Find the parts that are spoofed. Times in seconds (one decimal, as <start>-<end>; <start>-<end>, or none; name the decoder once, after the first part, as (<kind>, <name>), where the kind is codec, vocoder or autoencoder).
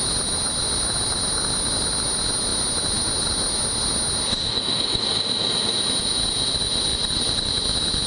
6.9-7.5 (vocoder, BigVGAN v2)